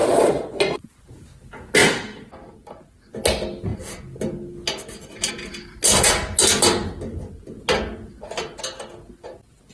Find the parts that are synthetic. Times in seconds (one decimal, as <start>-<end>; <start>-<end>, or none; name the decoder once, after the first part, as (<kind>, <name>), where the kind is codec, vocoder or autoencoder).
0.0-0.9 (vocoder, Vocos)